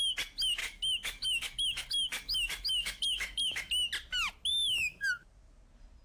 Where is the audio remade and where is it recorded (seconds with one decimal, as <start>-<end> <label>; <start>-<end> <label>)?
0.0-0.6 recorded; 0.6-3.7 remade; 3.7-4.5 recorded; 4.5-5.1 remade; 5.1-6.0 recorded